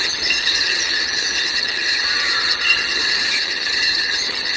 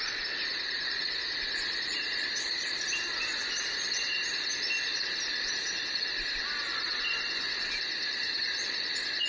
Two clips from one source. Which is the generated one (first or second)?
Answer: first